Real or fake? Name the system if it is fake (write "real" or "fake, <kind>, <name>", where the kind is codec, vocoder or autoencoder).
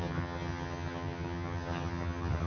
fake, vocoder, HiFi-GAN